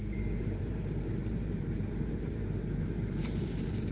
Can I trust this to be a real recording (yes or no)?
no